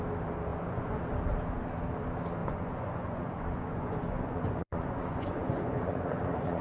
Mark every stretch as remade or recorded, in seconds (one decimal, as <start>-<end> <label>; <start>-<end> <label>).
0.0-0.5 recorded; 0.5-1.0 remade; 1.0-2.4 recorded; 2.4-6.6 remade